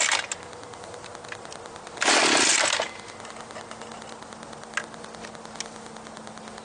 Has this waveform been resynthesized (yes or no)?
no